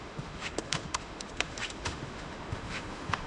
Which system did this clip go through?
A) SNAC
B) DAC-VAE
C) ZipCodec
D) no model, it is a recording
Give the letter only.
B